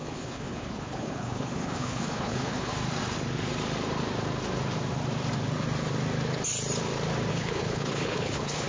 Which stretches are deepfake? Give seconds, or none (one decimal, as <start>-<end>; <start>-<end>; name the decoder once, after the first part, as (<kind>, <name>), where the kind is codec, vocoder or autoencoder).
0.0-2.7 (codec, HILCodec); 7.3-8.7